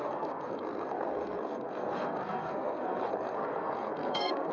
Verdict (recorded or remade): remade